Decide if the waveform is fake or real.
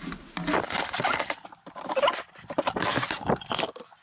real